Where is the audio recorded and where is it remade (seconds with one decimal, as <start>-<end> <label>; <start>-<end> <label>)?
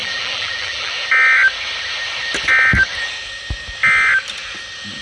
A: 0.0-0.9 remade; 0.9-5.0 recorded